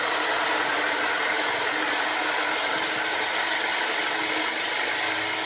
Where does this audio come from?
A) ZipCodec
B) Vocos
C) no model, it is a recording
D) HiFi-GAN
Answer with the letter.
C